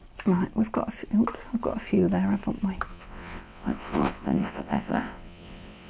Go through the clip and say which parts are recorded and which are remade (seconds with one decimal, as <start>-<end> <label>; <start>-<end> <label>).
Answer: 0.0-2.9 recorded; 2.9-5.9 remade